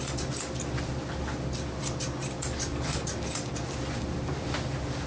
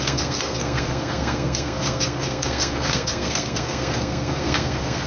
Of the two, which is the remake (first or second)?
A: second